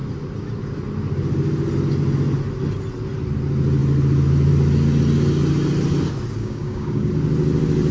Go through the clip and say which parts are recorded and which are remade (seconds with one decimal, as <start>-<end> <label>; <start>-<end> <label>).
0.0-6.4 recorded; 6.4-7.1 remade; 7.1-7.9 recorded